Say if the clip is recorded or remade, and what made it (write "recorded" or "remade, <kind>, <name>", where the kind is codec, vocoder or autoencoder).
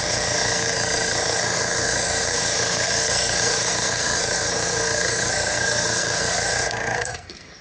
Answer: remade, codec, SNAC